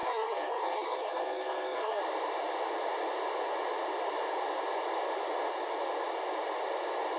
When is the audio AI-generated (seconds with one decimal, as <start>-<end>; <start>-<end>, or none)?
0.0-2.0